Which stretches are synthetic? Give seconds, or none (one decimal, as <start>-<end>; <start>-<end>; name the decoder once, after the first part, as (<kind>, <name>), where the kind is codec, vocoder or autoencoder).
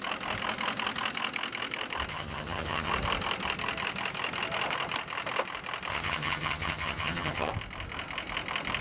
2.1-2.9 (vocoder, HiFi-GAN); 5.9-7.5